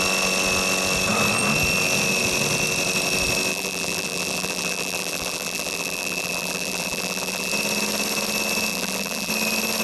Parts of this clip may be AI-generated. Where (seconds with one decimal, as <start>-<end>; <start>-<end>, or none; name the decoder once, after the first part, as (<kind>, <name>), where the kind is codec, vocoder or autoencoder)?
3.5-7.5 (vocoder, BigVGAN v2); 8.7-9.3